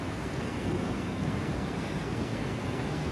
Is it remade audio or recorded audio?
remade